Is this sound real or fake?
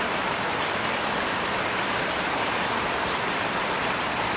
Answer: real